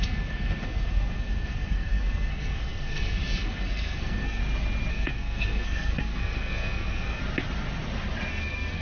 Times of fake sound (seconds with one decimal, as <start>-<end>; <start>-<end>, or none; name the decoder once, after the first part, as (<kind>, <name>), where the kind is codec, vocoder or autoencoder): 0.0-4.4 (codec, SNAC); 4.9-7.2; 8.3-8.8